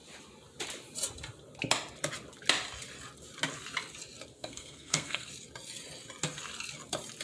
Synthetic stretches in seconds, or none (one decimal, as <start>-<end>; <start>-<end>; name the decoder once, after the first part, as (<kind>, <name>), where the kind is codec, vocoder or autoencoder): 4.3-5.3 (codec, SNAC)